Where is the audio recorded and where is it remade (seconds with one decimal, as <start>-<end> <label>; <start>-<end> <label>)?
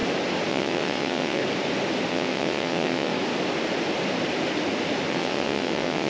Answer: 0.0-0.5 recorded; 0.5-1.4 remade; 1.4-2.1 recorded; 2.1-3.1 remade; 3.1-5.1 recorded; 5.1-6.1 remade